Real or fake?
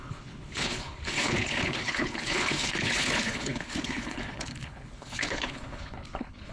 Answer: fake